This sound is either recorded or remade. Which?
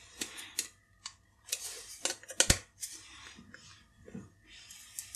recorded